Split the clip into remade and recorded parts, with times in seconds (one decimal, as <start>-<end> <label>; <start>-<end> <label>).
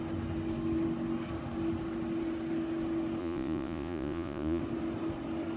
0.0-3.2 recorded; 3.2-4.6 remade; 4.6-5.6 recorded